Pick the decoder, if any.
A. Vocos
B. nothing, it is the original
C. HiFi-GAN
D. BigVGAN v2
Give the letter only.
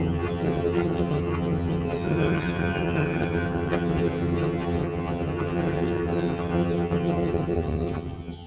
C